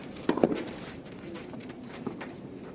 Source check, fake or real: fake